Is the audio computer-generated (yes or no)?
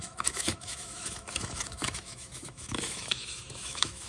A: yes